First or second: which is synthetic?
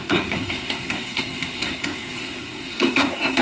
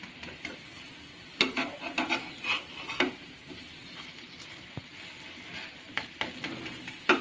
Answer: first